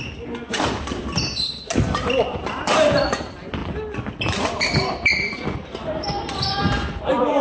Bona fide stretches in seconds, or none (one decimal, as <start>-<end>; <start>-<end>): 0.0-7.4